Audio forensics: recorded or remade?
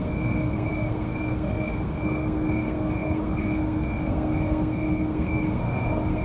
remade